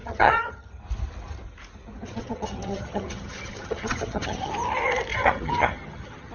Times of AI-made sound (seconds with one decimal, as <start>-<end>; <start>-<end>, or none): 0.0-0.8; 2.1-4.5; 5.1-6.3